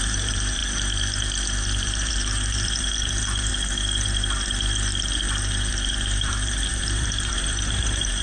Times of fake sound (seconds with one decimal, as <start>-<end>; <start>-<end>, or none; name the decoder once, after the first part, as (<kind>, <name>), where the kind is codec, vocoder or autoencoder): 0.0-0.6 (vocoder, BigVGAN v2); 1.8-3.5; 5.7-8.2